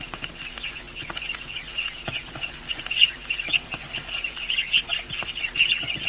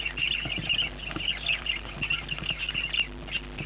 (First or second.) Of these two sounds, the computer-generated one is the first